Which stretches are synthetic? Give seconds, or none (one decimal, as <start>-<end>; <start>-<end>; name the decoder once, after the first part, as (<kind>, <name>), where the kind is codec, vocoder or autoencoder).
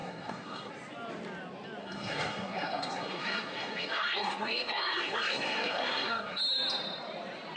0.0-0.7 (codec, SNAC); 1.8-6.4